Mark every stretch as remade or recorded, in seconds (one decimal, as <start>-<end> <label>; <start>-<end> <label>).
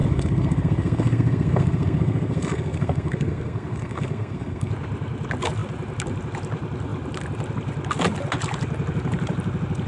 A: 0.0-4.7 remade; 4.7-9.9 recorded